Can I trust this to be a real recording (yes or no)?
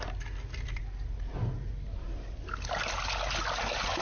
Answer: yes